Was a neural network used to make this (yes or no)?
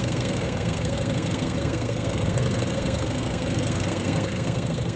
yes